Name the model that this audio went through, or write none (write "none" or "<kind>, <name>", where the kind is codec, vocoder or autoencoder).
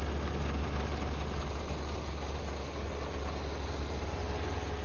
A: none